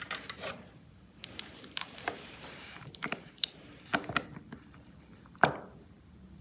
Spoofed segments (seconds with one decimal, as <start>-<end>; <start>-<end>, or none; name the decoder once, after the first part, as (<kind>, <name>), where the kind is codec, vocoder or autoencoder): 0.0-3.9 (vocoder, BigVGAN v2)